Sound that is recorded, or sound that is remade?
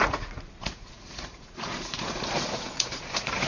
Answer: remade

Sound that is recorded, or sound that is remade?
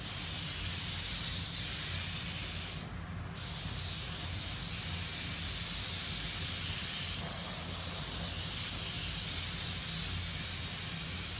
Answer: recorded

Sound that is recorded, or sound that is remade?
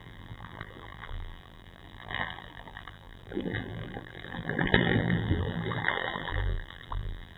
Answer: remade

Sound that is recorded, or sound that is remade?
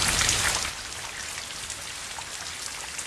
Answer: recorded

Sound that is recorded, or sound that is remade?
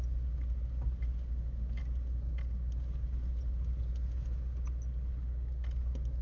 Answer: recorded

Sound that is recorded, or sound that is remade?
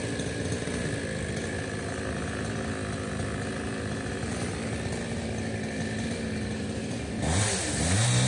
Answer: recorded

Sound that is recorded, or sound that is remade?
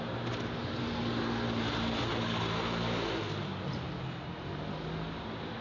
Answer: recorded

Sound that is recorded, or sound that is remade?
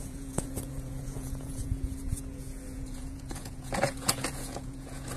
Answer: remade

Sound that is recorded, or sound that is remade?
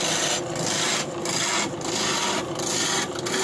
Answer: recorded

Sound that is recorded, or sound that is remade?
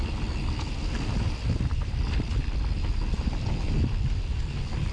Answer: recorded